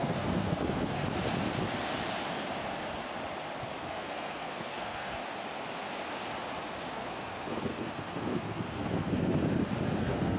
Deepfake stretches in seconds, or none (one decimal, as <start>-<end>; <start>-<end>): 0.0-1.0; 3.9-5.2; 6.9-9.4; 10.0-10.4